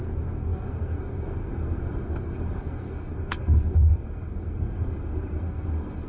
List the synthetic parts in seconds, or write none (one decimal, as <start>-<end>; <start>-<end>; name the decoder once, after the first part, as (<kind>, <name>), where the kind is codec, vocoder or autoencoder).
0.0-6.1 (codec, SNAC)